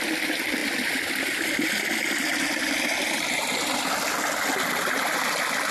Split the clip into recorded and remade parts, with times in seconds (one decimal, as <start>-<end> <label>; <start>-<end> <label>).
0.0-5.7 recorded